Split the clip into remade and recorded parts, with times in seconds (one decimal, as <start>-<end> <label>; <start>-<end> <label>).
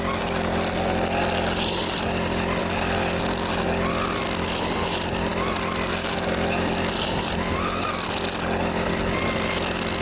0.0-2.6 recorded; 2.6-3.2 remade; 3.2-10.0 recorded